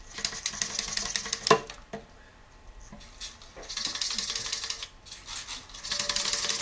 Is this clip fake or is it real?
real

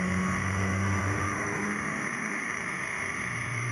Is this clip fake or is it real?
fake